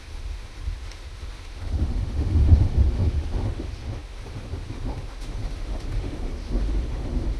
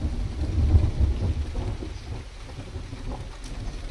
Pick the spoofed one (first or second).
first